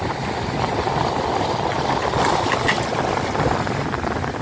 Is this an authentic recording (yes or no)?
yes